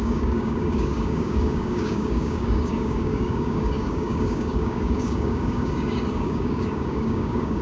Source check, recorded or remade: remade